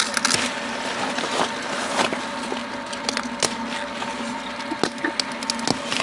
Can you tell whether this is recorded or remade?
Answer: recorded